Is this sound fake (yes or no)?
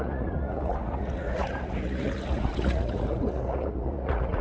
yes